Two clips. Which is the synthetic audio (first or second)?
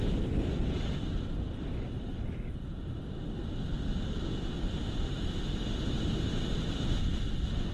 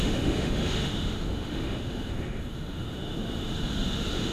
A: second